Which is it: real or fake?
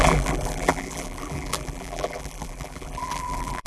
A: fake